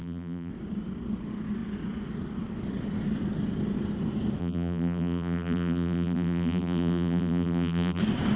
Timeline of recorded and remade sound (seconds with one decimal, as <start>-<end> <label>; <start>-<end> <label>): 0.0-0.5 remade; 0.5-4.4 recorded; 4.4-8.0 remade; 8.0-8.4 recorded